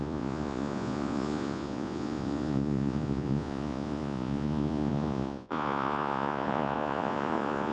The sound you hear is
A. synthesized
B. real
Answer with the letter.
A